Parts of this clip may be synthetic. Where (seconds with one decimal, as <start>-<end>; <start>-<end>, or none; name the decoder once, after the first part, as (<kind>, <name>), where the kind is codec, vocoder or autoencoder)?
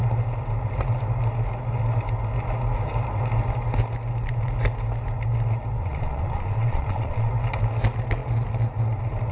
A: 5.8-7.3 (vocoder, Vocos)